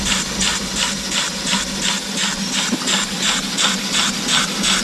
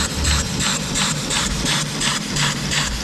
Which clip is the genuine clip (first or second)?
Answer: first